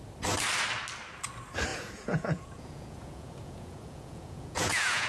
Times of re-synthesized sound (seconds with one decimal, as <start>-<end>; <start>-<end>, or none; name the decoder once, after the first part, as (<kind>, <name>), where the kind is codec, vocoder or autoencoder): 1.7-5.1 (vocoder, Vocos)